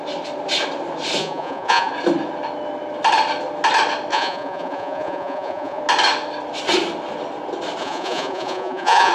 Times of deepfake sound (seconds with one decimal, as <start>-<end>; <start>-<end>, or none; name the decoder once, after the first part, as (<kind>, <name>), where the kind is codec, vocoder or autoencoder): 1.2-1.9 (vocoder, Vocos); 4.1-5.8; 7.8-9.1